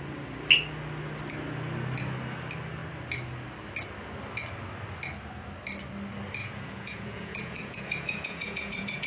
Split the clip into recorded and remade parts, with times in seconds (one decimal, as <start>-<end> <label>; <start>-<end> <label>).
0.0-6.4 recorded; 6.4-9.1 remade